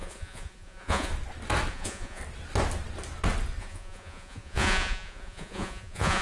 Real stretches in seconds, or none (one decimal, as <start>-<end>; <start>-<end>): 1.1-1.7; 2.2-3.6